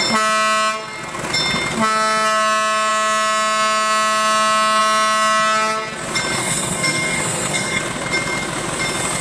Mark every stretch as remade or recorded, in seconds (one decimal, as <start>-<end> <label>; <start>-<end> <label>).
0.0-6.4 recorded; 6.4-7.8 remade; 7.8-9.2 recorded